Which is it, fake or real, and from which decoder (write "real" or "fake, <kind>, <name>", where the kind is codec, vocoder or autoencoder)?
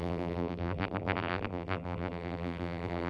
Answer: fake, vocoder, BigVGAN v2